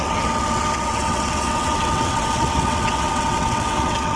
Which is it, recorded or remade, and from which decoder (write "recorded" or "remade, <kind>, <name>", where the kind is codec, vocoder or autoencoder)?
remade, vocoder, WaveNeXt